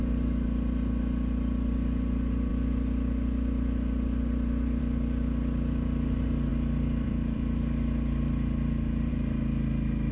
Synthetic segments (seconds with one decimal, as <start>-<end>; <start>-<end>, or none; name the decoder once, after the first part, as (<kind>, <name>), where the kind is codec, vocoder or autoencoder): 6.5-9.1 (vocoder, BigVGAN v2)